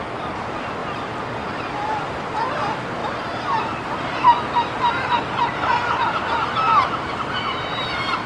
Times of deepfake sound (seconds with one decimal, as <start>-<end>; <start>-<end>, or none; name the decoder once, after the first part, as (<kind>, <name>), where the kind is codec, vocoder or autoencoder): 3.0-8.3 (vocoder, BigVGAN v2)